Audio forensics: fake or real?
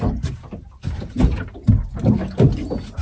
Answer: real